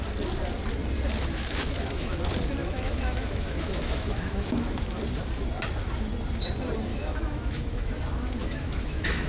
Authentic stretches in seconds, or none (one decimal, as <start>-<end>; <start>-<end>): 0.0-1.2; 2.2-2.6; 5.0-6.9; 7.9-8.4